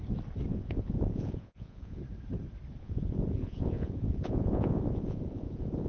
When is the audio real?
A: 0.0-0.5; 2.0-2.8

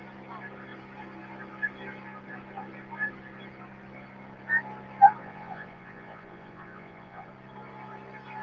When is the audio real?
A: 0.0-5.2; 7.3-8.4

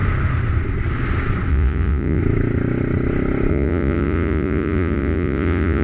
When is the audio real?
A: 0.0-1.5; 2.2-3.5

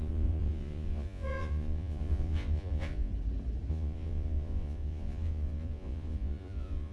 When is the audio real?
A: 3.1-3.7

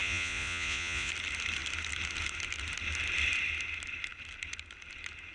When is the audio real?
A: 1.1-5.3

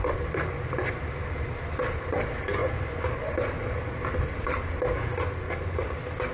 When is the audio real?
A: 0.0-6.3

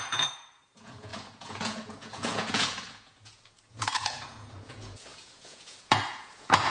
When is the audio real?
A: none